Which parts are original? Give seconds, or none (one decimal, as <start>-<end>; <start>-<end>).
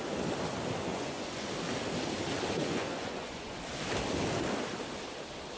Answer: 0.0-0.9; 1.5-2.6; 3.6-5.6